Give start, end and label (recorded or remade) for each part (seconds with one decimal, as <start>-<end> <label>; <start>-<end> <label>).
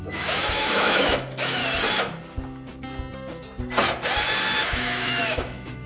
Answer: 0.0-1.6 remade; 1.6-4.6 recorded; 4.6-5.9 remade